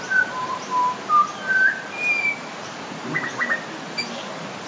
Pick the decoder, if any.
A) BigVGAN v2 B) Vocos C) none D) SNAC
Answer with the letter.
C